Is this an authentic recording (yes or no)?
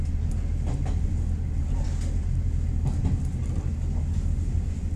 yes